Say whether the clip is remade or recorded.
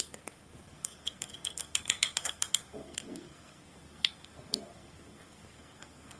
remade